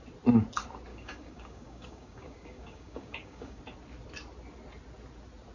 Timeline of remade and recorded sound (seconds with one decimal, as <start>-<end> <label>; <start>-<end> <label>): 0.0-0.9 recorded; 0.9-3.6 remade; 3.6-5.5 recorded